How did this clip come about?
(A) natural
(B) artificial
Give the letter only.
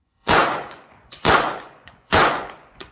B